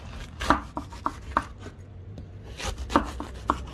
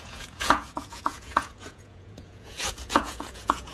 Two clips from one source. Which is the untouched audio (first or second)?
first